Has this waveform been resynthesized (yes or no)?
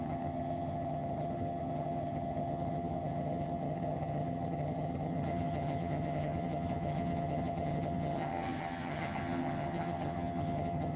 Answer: yes